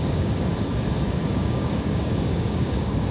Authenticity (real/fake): fake